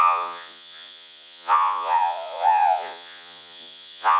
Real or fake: fake